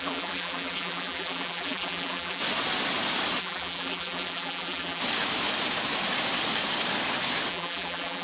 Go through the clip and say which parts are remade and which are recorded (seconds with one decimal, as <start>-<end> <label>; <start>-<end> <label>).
0.0-2.4 remade; 2.4-3.4 recorded; 3.4-5.0 remade; 5.0-7.5 recorded; 7.5-8.2 remade